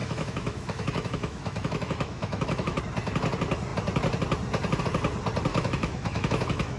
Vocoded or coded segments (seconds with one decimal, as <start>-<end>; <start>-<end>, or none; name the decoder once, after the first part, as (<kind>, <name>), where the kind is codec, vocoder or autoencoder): 0.0-2.8 (autoencoder, DAC-VAE); 5.5-6.8